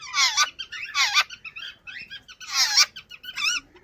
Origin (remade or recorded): recorded